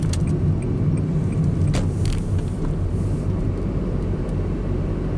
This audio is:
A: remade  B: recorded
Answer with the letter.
B